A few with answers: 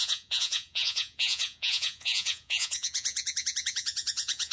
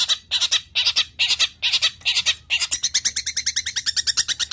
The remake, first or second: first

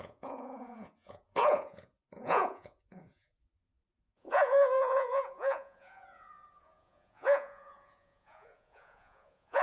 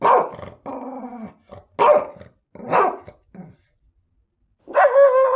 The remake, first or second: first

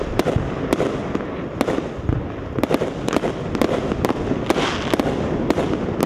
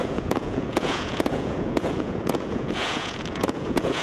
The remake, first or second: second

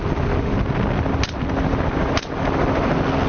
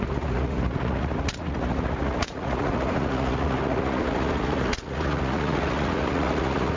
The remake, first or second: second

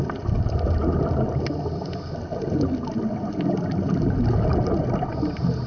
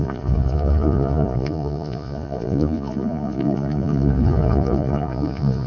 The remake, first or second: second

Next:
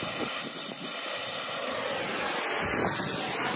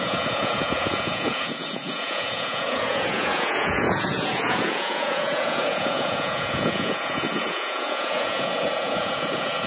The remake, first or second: second